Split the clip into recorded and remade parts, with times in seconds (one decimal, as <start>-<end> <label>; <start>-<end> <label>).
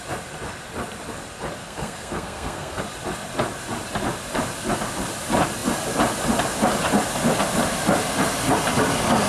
0.0-1.6 recorded; 1.6-2.8 remade; 2.8-9.3 recorded